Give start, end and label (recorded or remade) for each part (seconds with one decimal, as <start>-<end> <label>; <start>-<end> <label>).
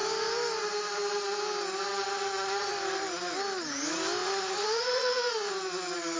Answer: 0.0-1.9 recorded; 1.9-2.6 remade; 2.6-4.2 recorded; 4.2-5.5 remade; 5.5-6.2 recorded